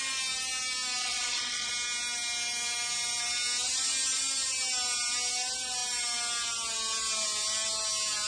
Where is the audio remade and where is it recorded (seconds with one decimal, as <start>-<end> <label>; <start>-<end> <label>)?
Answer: 0.0-1.0 recorded; 1.0-1.7 remade; 1.7-8.3 recorded